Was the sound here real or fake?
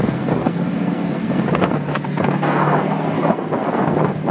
fake